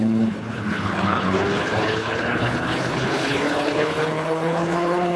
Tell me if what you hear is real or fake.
fake